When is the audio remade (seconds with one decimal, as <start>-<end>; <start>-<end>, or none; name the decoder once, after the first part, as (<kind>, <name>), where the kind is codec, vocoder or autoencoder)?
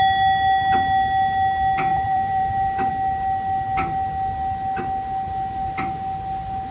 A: 1.9-2.9 (vocoder, BigVGAN v2)